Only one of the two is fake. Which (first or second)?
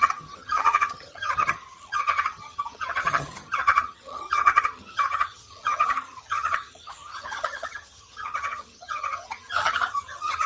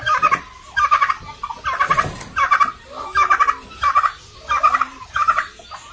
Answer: first